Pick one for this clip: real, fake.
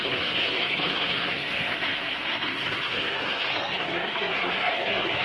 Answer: fake